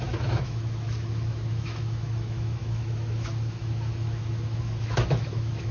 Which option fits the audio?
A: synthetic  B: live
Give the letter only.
A